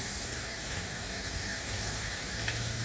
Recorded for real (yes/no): no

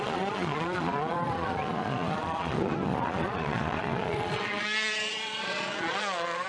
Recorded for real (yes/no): no